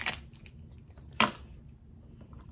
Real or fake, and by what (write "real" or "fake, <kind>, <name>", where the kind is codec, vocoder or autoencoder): real